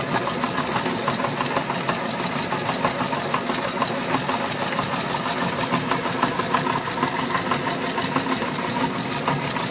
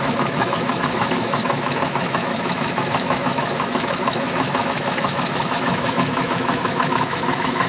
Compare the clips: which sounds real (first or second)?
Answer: first